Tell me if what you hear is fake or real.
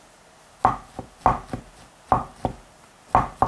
real